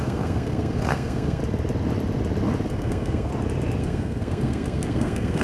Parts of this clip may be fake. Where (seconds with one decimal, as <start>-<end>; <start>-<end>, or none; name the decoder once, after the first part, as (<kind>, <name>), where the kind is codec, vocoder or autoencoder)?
0.0-1.4 (codec, SNAC); 2.7-3.3; 3.8-5.4